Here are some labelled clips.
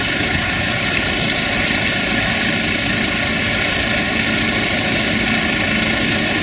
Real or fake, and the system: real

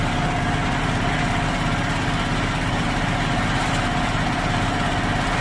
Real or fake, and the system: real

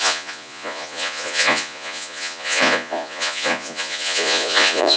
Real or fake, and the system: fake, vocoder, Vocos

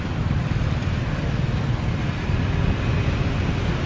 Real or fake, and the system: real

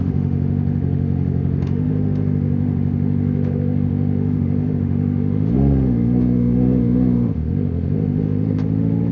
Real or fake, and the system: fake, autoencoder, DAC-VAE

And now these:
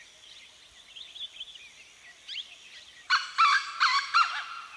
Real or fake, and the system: real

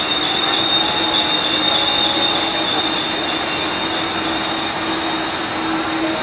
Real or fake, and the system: real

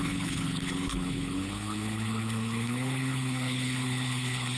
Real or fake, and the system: fake, codec, HILCodec